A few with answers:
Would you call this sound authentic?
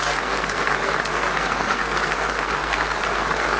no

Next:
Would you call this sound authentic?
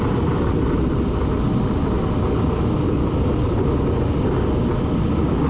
yes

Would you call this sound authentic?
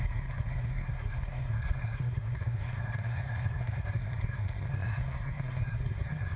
no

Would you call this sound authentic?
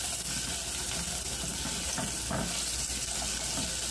yes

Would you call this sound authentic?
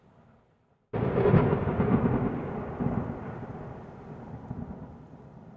yes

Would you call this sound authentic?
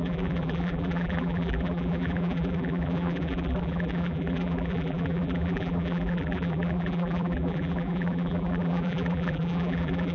no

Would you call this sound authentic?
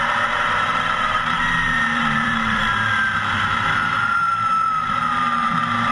no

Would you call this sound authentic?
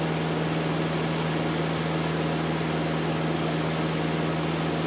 yes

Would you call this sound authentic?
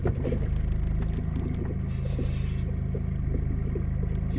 yes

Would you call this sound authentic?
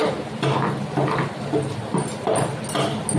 yes